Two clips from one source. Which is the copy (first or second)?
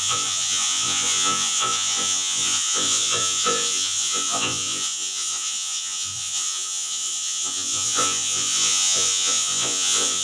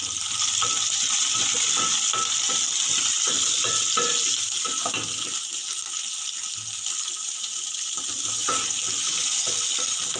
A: first